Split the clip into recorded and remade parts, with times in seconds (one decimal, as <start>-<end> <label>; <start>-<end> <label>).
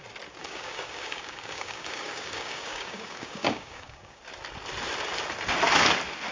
0.0-0.4 recorded; 0.4-4.2 remade; 4.2-6.3 recorded